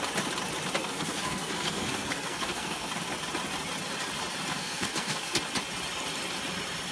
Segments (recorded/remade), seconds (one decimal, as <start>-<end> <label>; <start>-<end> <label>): 0.0-0.8 recorded; 0.8-2.9 remade; 2.9-4.5 recorded; 4.5-5.4 remade; 5.4-6.9 recorded